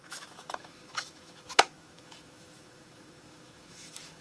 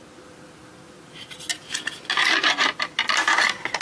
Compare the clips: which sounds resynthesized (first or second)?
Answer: first